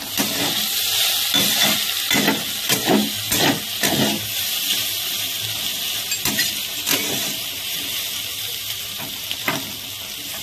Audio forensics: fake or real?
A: real